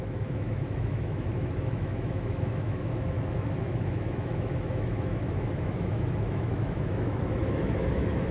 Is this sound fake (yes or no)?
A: yes